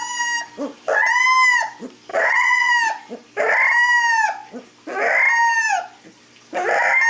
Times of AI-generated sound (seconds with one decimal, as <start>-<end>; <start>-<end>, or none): 2.1-2.7